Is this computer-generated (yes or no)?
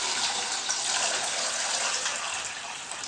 no